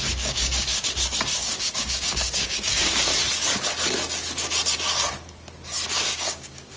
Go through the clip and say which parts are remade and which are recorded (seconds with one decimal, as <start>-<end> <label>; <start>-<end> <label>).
0.0-3.1 remade; 3.1-5.9 recorded; 5.9-6.8 remade